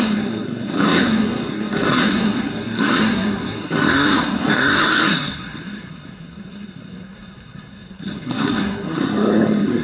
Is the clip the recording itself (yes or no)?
no